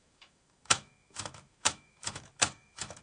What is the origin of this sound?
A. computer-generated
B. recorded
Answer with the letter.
A